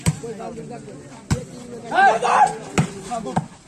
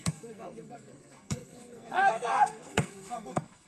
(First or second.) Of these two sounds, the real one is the first